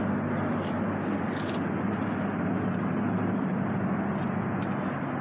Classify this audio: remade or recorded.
recorded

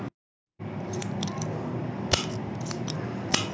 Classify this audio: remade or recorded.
remade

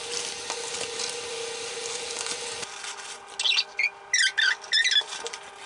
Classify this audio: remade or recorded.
recorded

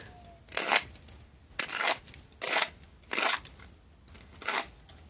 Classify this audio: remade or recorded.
recorded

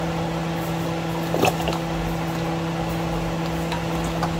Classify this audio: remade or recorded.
recorded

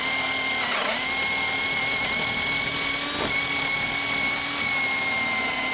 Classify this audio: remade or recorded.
recorded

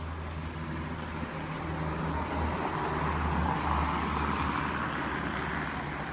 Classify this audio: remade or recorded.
recorded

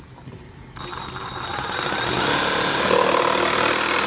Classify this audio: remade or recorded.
recorded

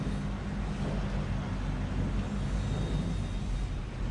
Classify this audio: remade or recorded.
recorded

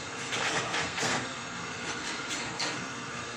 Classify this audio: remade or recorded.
remade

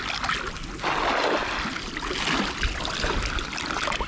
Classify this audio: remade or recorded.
recorded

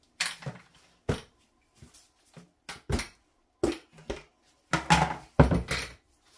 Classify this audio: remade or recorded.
recorded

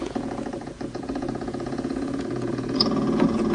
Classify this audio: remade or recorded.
remade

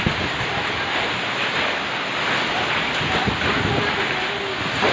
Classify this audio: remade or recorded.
recorded